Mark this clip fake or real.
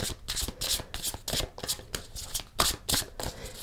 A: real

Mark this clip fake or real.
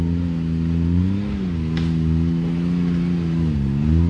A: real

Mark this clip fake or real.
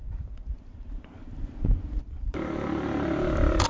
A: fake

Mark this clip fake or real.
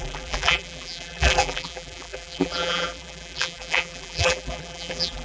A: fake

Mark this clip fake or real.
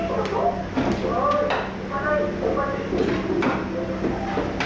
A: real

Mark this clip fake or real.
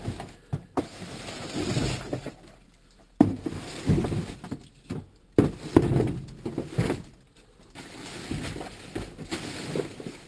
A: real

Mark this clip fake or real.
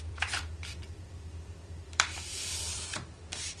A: fake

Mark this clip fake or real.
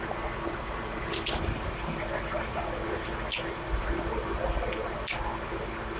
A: real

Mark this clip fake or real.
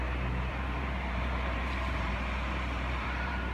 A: fake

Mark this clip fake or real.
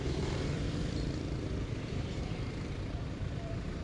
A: fake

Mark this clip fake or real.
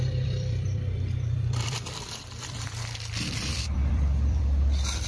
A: fake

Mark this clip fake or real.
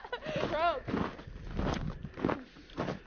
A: real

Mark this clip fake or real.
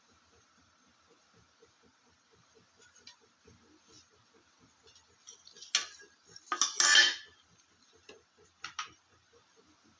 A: real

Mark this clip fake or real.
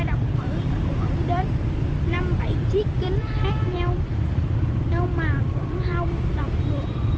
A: fake